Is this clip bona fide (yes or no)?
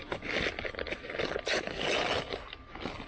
yes